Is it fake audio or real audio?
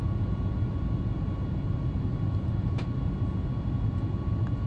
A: real